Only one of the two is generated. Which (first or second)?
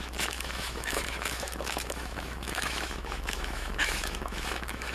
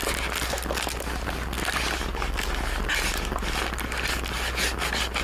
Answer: first